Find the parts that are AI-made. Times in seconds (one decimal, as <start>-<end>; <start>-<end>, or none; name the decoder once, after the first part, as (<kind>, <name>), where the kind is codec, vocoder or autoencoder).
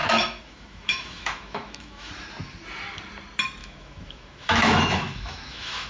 0.0-2.1 (autoencoder, DAC-VAE); 3.6-5.9